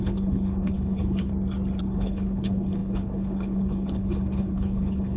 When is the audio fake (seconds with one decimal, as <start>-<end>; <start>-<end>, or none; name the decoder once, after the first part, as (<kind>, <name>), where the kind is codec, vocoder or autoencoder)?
0.0-1.3 (codec, HILCodec); 1.8-5.2